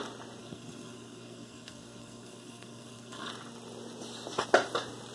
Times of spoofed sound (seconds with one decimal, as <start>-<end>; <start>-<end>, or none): 0.4-3.3